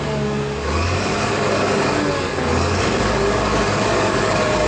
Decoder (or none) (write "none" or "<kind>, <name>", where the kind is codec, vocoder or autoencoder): codec, DAC